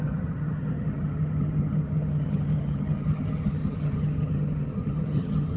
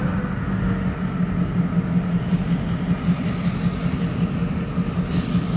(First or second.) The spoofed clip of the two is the first